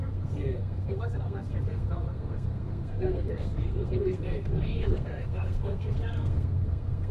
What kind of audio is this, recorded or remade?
remade